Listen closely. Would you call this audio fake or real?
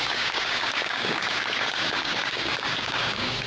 fake